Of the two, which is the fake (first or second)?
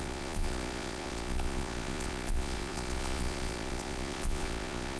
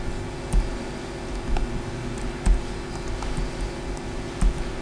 first